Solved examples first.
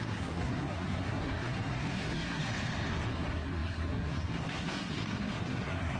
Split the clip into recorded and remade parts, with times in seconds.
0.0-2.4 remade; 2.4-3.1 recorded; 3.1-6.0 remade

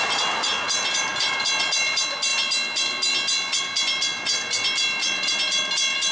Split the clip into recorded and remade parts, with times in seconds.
0.0-6.1 recorded

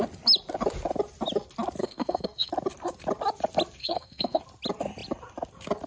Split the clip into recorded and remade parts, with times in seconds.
0.0-1.8 recorded; 1.8-2.5 remade; 2.5-3.8 recorded; 3.8-4.4 remade; 4.4-5.9 recorded

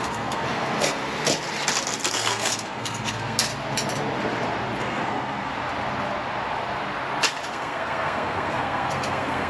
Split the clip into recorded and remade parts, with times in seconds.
0.0-1.0 remade; 1.0-2.1 recorded; 2.1-3.5 remade; 3.5-4.8 recorded; 4.8-5.5 remade; 5.5-7.5 recorded; 7.5-9.5 remade

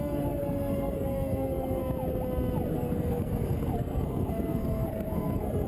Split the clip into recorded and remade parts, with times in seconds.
0.0-1.8 remade; 1.8-2.7 recorded; 2.7-5.7 remade

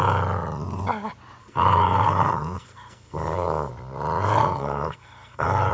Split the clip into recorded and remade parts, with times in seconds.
0.0-1.4 recorded; 1.4-3.7 remade; 3.7-4.4 recorded; 4.4-5.7 remade